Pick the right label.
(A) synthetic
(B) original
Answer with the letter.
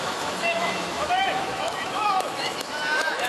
A